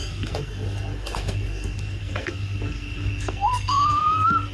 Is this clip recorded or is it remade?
remade